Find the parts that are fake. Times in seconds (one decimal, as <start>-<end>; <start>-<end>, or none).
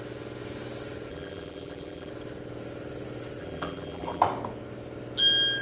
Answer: 1.1-2.1; 3.4-4.2